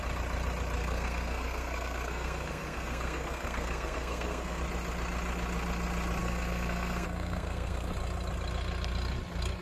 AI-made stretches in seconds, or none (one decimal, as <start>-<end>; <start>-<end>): 0.8-4.6; 6.2-7.9